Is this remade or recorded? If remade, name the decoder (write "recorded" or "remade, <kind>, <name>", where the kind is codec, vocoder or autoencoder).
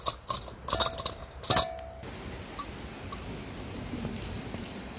recorded